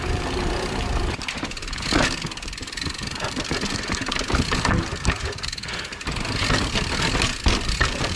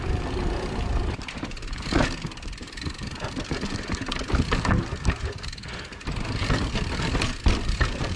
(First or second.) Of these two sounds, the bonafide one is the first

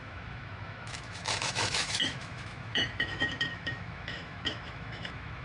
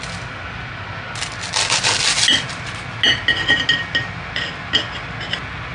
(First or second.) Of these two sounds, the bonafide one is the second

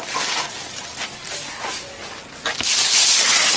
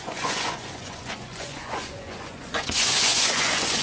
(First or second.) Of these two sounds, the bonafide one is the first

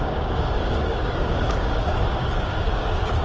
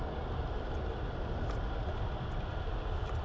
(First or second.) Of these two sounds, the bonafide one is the second